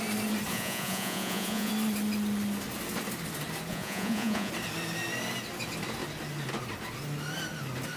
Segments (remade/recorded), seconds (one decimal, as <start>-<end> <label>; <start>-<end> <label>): 0.0-0.5 recorded; 0.5-1.7 remade; 1.7-3.7 recorded; 3.7-4.5 remade; 4.5-8.0 recorded